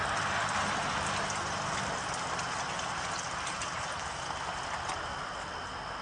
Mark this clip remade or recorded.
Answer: recorded